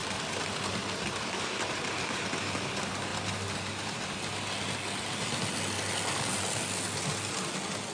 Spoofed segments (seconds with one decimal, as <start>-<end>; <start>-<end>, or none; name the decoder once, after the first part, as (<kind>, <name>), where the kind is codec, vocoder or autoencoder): none

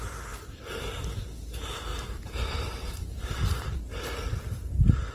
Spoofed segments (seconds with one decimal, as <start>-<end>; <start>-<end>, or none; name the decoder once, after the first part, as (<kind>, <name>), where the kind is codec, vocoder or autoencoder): 1.9-3.4 (vocoder, BigVGAN v2)

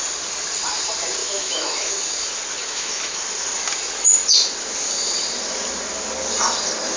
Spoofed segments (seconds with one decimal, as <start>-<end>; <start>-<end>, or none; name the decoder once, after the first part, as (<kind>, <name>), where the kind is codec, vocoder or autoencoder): 1.2-1.9 (autoencoder, DAC-VAE); 2.6-3.2

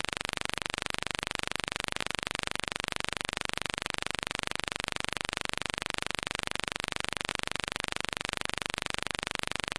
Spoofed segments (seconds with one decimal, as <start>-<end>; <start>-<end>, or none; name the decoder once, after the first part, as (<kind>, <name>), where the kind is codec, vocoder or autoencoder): none

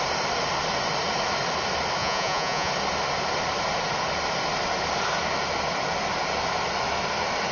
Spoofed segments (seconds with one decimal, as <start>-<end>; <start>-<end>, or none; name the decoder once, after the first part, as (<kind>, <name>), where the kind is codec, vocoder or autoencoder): 2.0-2.7 (vocoder, Vocos)

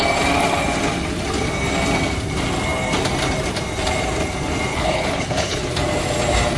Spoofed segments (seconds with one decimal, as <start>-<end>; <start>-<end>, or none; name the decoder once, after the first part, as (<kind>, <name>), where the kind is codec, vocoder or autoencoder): 4.7-5.6 (codec, HILCodec)